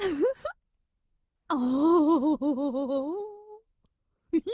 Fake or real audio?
real